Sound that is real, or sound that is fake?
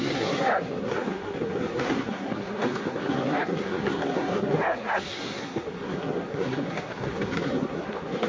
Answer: fake